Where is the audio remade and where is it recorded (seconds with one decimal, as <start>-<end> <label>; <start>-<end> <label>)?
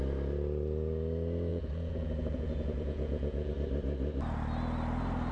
0.0-1.5 recorded; 1.5-3.5 remade; 3.5-5.3 recorded